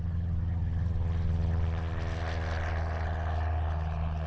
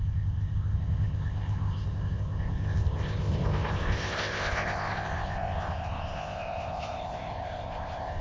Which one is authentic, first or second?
first